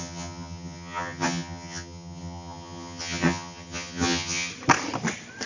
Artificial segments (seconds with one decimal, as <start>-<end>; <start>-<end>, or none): 0.0-4.5